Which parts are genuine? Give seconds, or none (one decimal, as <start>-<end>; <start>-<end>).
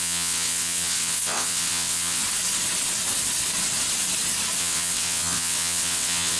2.2-4.6